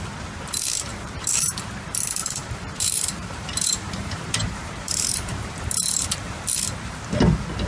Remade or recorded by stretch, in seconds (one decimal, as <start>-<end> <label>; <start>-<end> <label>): 0.0-0.9 recorded; 0.9-1.6 remade; 1.6-2.2 recorded; 2.2-6.5 remade; 6.5-7.7 recorded